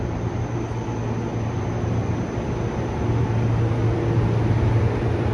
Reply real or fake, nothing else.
real